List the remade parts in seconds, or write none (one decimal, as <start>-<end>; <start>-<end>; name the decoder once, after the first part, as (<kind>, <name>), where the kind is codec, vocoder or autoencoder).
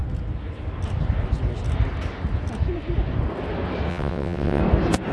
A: 3.9-4.6 (vocoder, WaveNeXt)